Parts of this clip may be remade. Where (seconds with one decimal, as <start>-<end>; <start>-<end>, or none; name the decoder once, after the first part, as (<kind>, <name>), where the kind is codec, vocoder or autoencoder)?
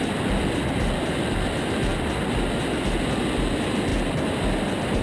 0.0-1.9 (vocoder, BigVGAN v2); 2.6-3.9